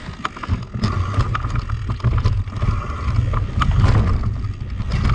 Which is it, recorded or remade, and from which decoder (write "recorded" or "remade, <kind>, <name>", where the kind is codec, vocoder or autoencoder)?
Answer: recorded